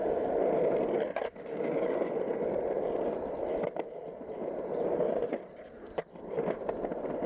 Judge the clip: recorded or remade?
recorded